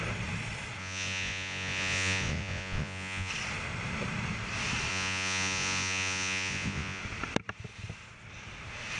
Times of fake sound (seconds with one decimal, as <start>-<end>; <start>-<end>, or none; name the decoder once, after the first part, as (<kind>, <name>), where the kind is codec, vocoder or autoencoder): 0.8-3.3 (vocoder, Vocos); 4.9-7.0